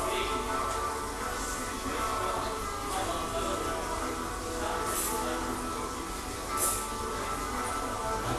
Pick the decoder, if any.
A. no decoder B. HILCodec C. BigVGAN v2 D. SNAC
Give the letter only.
A